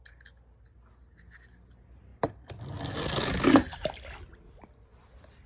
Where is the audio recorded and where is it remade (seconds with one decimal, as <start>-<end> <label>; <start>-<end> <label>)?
0.0-5.5 recorded